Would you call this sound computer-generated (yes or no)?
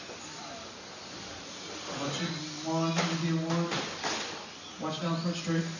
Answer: no